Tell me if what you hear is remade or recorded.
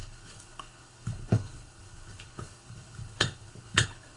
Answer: remade